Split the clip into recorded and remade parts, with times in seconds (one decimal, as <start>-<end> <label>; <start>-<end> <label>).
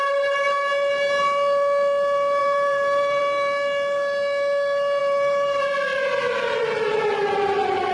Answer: 0.0-2.4 recorded; 2.4-3.2 remade; 3.2-5.0 recorded; 5.0-5.6 remade; 5.6-7.9 recorded